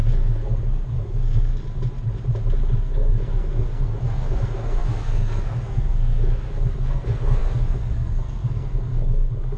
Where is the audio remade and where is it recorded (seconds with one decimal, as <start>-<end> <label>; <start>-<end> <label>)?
0.0-1.5 remade; 1.5-2.8 recorded; 2.8-9.6 remade